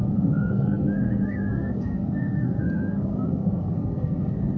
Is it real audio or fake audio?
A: fake